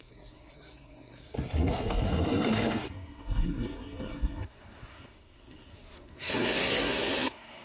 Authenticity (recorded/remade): remade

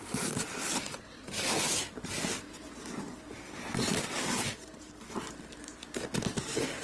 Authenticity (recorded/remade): remade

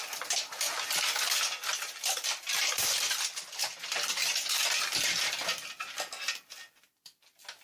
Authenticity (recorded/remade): remade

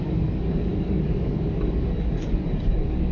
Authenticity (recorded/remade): remade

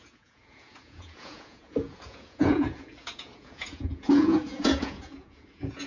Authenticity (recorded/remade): remade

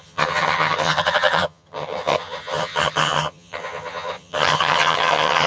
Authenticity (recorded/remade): remade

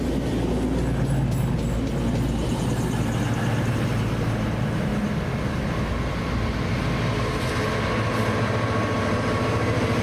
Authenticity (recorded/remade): recorded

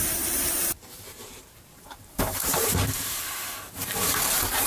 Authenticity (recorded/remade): remade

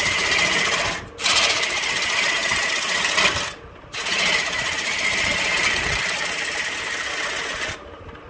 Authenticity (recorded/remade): recorded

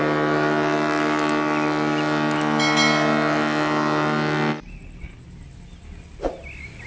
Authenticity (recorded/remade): recorded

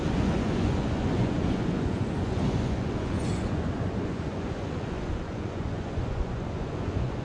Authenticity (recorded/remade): remade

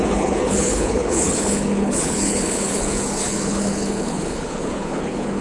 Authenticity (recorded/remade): remade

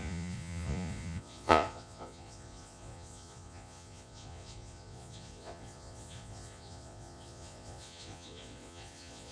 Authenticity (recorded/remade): remade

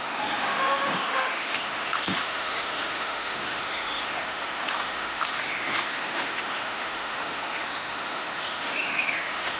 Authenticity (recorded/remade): remade